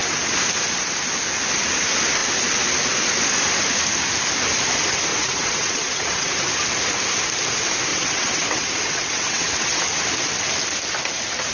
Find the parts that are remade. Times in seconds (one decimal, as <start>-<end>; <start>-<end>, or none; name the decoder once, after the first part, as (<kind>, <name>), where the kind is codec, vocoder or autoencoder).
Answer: 5.1-6.3 (vocoder, WaveNeXt); 7.9-9.8